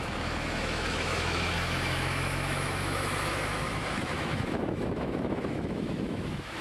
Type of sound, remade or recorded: remade